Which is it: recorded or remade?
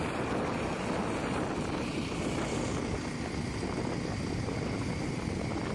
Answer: recorded